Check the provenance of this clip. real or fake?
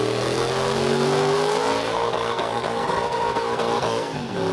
fake